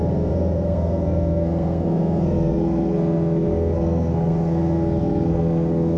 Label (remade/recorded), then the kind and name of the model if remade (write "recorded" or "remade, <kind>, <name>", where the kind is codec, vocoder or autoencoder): remade, codec, SNAC